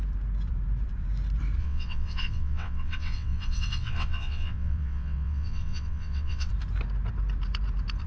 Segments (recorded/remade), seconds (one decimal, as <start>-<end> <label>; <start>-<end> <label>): 0.0-1.6 recorded; 1.6-6.5 remade; 6.5-8.1 recorded